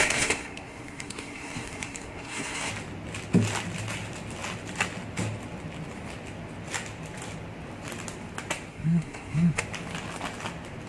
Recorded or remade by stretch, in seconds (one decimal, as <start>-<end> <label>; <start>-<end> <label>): 0.0-2.7 remade; 2.7-8.7 recorded; 8.7-9.6 remade; 9.6-10.9 recorded